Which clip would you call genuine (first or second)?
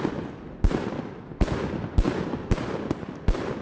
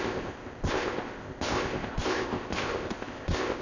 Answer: first